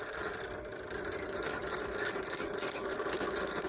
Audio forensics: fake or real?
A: fake